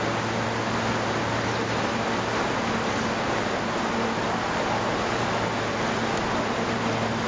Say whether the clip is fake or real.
real